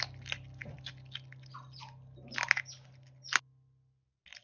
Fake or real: real